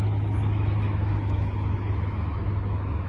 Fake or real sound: fake